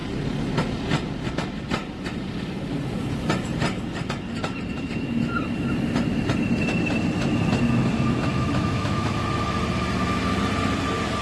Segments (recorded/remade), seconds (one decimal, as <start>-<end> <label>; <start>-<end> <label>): 0.0-8.3 recorded; 8.3-9.2 remade; 9.2-11.2 recorded